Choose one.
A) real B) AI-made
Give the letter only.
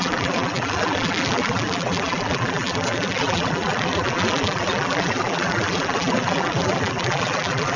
B